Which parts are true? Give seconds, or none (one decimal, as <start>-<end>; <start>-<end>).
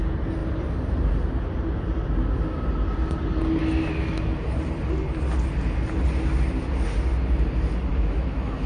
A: 0.0-7.9